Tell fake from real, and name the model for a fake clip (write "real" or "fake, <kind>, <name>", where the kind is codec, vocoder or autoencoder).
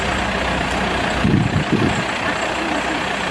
real